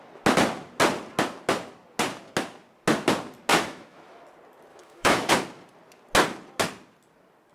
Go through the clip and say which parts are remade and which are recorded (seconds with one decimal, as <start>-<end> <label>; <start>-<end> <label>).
0.0-3.5 recorded; 3.5-4.2 remade; 4.2-4.7 recorded; 4.7-5.3 remade; 5.3-7.5 recorded